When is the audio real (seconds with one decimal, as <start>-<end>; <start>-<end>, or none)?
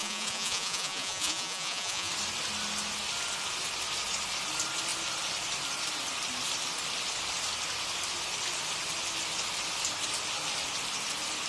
2.1-11.5